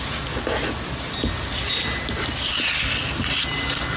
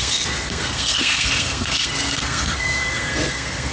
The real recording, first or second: first